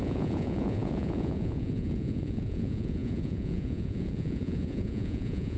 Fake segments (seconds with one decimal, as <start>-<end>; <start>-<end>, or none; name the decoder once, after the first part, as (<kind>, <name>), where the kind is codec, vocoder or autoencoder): 0.0-5.6 (vocoder, Vocos)